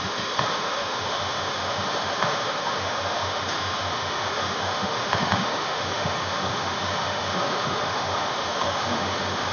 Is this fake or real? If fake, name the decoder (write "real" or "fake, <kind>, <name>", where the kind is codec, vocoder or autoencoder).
fake, autoencoder, DAC-VAE